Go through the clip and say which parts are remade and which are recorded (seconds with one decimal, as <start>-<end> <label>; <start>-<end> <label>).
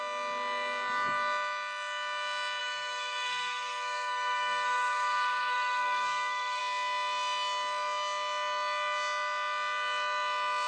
0.0-2.6 recorded; 2.6-6.6 remade; 6.6-10.7 recorded